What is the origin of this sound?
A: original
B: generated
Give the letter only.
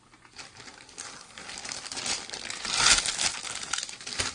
A